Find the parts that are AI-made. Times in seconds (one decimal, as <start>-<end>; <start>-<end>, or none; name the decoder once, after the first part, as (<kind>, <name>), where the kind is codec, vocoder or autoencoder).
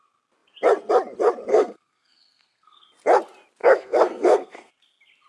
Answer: 1.5-2.9 (codec, SNAC); 3.6-4.7